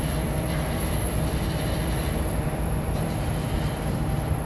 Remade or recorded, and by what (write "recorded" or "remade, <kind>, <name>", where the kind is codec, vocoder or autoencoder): remade, vocoder, BigVGAN v2